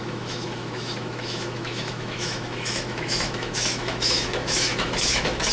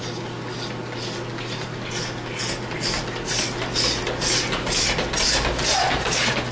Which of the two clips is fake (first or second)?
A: first